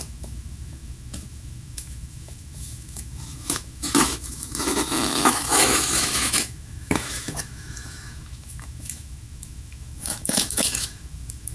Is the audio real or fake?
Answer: fake